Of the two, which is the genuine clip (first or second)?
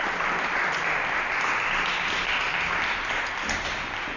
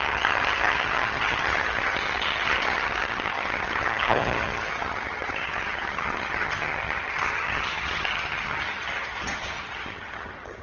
first